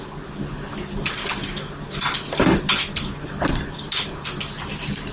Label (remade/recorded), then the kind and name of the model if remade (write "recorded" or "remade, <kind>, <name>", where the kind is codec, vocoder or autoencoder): recorded